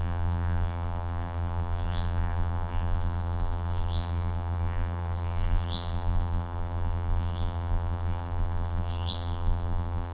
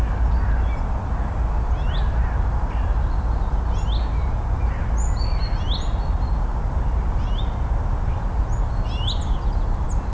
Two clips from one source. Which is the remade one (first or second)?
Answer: first